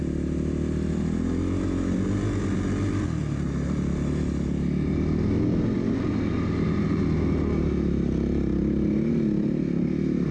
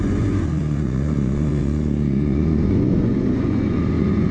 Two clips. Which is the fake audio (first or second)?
second